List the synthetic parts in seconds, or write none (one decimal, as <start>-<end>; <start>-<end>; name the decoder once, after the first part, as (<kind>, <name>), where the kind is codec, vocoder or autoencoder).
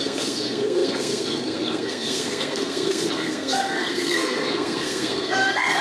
0.0-5.8 (codec, SNAC)